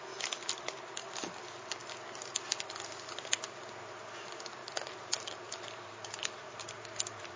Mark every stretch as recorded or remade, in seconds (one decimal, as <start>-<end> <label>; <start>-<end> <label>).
0.0-4.6 recorded; 4.6-6.5 remade; 6.5-7.4 recorded